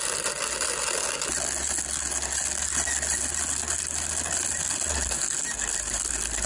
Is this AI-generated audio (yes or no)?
no